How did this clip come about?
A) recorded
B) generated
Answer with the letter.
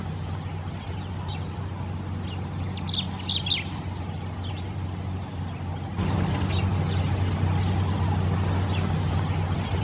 A